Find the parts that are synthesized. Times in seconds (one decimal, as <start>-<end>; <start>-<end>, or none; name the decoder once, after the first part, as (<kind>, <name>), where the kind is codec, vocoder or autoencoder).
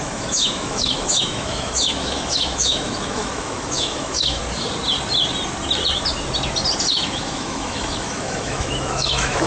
0.0-4.4 (autoencoder, DAC-VAE); 6.9-9.5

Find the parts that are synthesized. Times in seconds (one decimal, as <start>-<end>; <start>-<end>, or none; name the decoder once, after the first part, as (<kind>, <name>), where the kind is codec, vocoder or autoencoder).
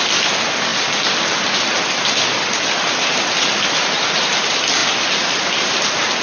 none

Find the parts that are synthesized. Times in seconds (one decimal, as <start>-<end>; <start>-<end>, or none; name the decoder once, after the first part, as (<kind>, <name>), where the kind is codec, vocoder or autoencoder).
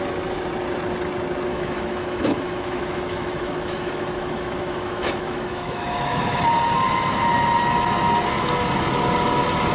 1.5-6.4 (autoencoder, DAC-VAE)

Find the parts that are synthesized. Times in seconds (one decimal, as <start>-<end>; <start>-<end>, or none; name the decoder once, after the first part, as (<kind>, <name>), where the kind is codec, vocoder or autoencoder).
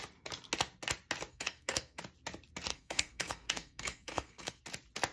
1.3-2.0 (codec, SNAC); 2.7-4.6